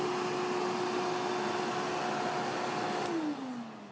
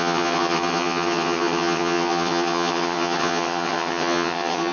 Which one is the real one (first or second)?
first